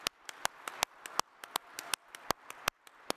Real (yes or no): yes